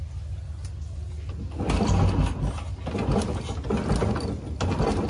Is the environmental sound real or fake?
real